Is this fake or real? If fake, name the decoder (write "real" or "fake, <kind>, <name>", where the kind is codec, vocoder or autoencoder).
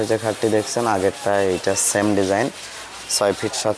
real